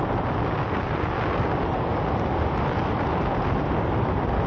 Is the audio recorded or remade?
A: recorded